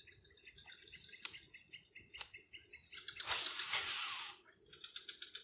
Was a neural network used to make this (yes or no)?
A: no